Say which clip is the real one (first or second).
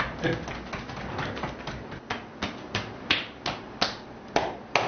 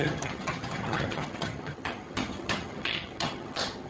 first